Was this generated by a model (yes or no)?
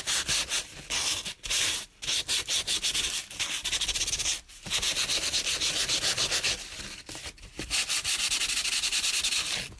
no